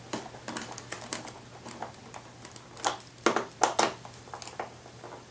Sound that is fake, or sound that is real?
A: real